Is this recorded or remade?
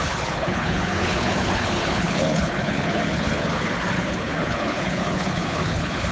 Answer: remade